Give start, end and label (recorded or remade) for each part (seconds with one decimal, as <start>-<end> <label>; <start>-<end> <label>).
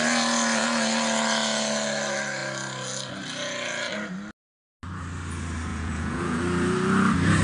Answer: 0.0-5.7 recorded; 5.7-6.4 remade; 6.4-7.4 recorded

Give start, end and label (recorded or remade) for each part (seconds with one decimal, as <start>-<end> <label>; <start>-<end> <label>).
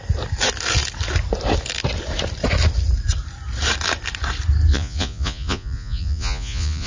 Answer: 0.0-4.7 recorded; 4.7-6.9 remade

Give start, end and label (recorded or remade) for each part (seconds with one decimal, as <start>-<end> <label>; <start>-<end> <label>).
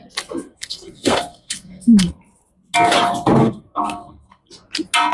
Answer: 0.0-0.5 recorded; 0.5-2.2 remade; 2.2-3.4 recorded; 3.4-4.5 remade; 4.5-5.1 recorded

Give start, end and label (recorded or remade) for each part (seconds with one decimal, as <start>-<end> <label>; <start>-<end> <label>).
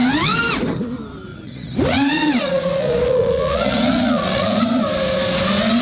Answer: 0.0-1.3 recorded; 1.3-4.8 remade; 4.8-5.8 recorded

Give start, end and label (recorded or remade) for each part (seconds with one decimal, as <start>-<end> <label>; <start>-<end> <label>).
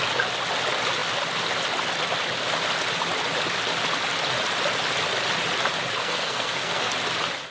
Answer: 0.0-6.0 recorded; 6.0-6.9 remade; 6.9-7.5 recorded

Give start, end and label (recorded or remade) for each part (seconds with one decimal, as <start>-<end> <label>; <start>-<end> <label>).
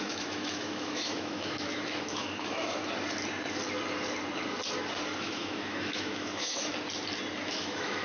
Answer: 0.0-2.8 remade; 2.8-5.2 recorded; 5.2-6.7 remade; 6.7-7.4 recorded; 7.4-8.0 remade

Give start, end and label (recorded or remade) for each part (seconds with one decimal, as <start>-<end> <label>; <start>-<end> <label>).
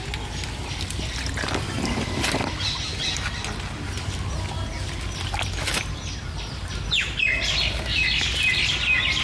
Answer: 0.0-9.2 recorded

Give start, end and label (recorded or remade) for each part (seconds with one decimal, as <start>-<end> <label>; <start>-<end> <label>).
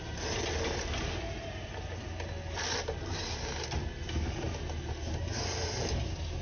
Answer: 0.0-6.4 recorded